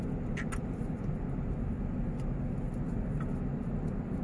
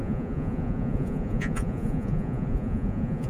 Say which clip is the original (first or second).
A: first